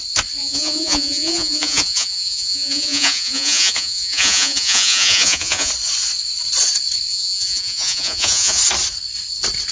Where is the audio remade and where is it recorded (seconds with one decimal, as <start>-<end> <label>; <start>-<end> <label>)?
0.0-0.4 recorded; 0.4-5.7 remade; 5.7-7.1 recorded; 7.1-8.6 remade; 8.6-9.7 recorded